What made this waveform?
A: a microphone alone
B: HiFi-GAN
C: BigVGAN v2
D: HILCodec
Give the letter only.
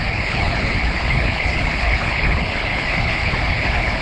D